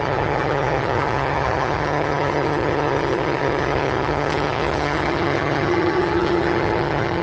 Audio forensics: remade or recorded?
remade